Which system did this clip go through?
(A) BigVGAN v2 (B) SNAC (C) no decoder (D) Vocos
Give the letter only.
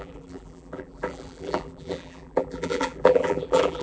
A